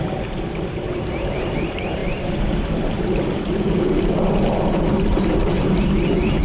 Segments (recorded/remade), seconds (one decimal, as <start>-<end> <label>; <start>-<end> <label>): 0.0-6.4 remade